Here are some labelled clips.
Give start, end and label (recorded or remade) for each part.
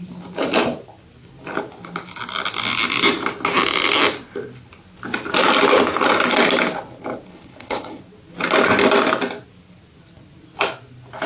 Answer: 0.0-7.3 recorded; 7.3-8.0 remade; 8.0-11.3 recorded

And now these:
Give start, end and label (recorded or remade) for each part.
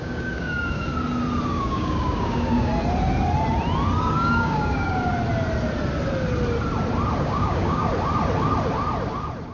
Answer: 0.0-0.9 remade; 0.9-1.5 recorded; 1.5-2.7 remade; 2.7-4.0 recorded; 4.0-5.1 remade; 5.1-7.2 recorded; 7.2-7.9 remade; 7.9-9.5 recorded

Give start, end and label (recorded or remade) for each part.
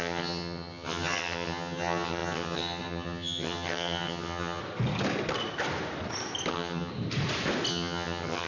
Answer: 0.0-4.6 remade; 4.6-6.5 recorded; 6.5-6.9 remade; 6.9-7.7 recorded; 7.7-8.5 remade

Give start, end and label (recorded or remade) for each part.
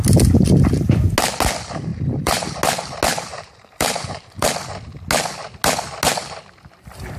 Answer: 0.0-1.9 recorded; 1.9-2.6 remade; 2.6-3.3 recorded; 3.3-4.5 remade; 4.5-7.2 recorded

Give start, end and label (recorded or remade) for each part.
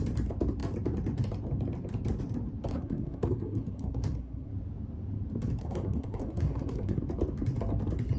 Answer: 0.0-2.7 recorded; 2.7-4.5 remade; 4.5-5.6 recorded; 5.6-7.0 remade; 7.0-8.2 recorded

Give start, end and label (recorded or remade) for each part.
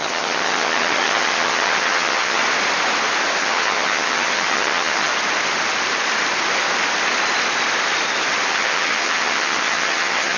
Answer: 0.0-2.4 remade; 2.4-3.4 recorded; 3.4-5.1 remade; 5.1-8.5 recorded; 8.5-10.4 remade